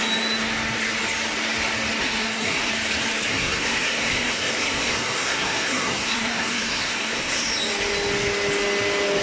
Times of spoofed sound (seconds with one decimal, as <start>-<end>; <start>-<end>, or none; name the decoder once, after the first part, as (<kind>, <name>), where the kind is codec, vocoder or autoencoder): 2.0-2.7 (codec, SNAC); 3.3-7.5